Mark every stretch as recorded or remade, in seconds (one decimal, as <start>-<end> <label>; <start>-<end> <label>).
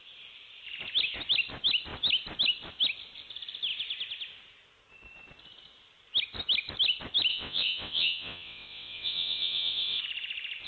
0.0-7.3 recorded; 7.3-10.0 remade; 10.0-10.7 recorded